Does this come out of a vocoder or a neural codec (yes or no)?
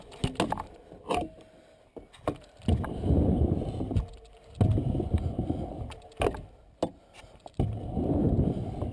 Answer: no